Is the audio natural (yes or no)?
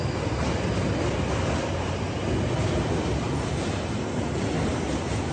yes